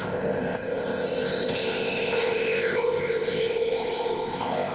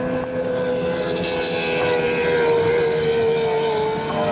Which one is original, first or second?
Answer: second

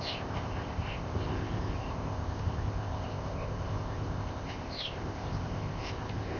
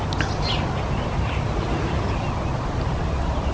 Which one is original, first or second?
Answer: second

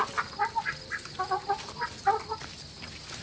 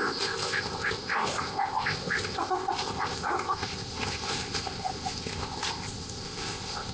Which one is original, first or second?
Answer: first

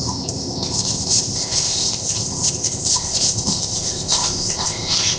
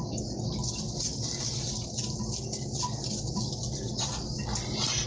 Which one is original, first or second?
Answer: second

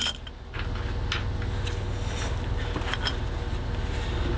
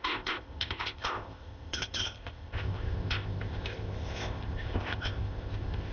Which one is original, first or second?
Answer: first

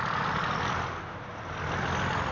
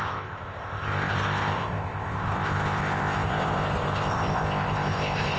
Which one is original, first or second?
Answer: first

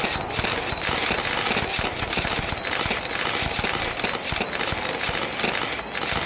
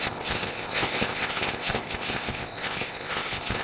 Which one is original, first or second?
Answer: first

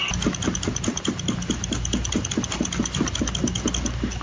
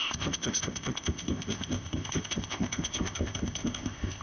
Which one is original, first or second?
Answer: first